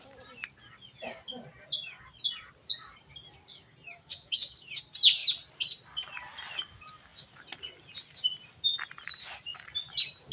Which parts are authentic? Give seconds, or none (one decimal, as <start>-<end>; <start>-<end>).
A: 0.0-3.5; 4.8-10.3